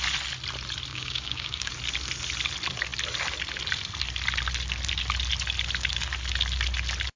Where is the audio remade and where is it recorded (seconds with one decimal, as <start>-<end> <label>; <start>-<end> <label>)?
0.0-0.9 recorded; 0.9-1.7 remade; 1.7-7.2 recorded